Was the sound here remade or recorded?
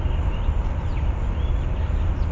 recorded